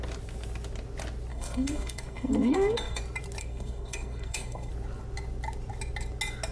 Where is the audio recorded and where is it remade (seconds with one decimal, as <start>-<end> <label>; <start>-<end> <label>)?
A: 0.0-1.3 recorded; 1.3-3.0 remade; 3.0-3.4 recorded; 3.4-4.7 remade; 4.7-6.5 recorded